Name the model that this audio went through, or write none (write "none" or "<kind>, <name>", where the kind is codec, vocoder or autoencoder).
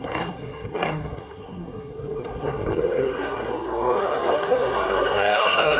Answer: codec, SNAC